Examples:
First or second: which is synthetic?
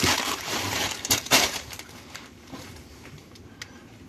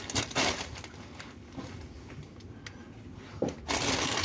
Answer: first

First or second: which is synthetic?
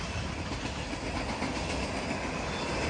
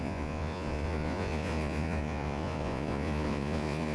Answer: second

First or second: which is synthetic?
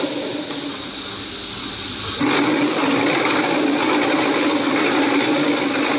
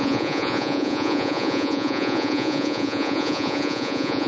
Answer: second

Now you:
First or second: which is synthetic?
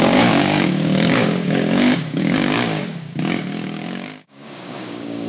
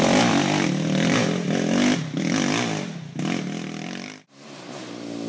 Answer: first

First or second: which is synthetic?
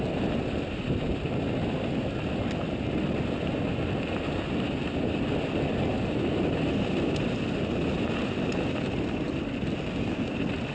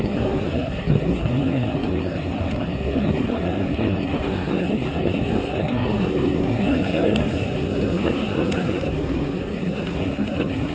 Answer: second